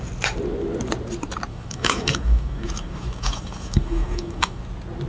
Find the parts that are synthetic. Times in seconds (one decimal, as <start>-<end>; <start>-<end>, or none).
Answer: 1.5-4.6